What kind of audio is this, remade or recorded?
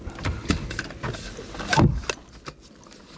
recorded